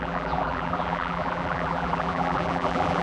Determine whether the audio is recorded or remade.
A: remade